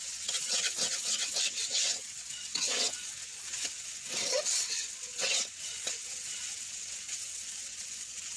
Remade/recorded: remade